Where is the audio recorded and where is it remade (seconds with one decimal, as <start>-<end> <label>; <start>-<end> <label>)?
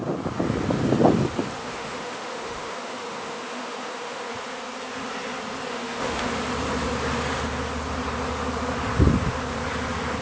0.0-1.6 recorded; 1.6-4.3 remade; 4.3-5.7 recorded; 5.7-6.3 remade; 6.3-10.2 recorded